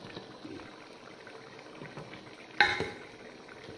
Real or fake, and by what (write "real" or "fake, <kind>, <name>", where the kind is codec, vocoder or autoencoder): real